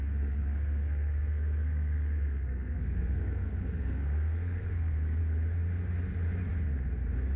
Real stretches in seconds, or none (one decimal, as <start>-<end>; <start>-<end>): 5.2-7.4